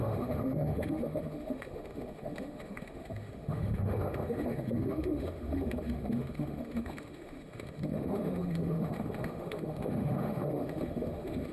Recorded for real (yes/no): no